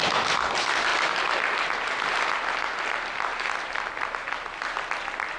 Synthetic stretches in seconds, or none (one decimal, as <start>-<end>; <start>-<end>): none